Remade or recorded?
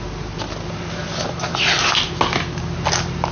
recorded